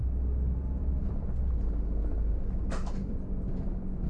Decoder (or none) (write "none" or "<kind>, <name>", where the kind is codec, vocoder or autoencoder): none